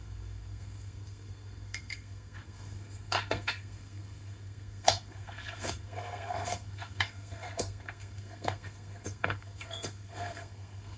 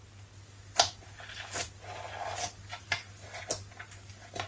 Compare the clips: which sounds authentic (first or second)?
second